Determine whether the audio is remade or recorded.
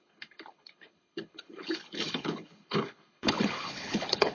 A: remade